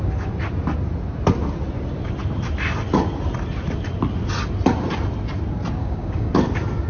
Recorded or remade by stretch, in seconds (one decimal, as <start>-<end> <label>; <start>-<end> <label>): 0.0-5.8 recorded; 5.8-6.3 remade; 6.3-6.9 recorded